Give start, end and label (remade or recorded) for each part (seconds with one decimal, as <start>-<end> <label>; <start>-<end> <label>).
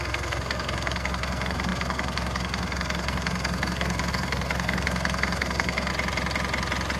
0.0-5.9 remade; 5.9-7.0 recorded